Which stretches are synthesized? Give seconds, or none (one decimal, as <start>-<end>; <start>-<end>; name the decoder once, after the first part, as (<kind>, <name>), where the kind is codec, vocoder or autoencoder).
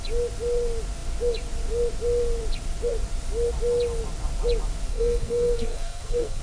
4.9-6.4 (codec, SNAC)